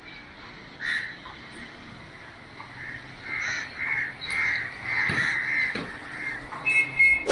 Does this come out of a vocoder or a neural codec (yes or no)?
no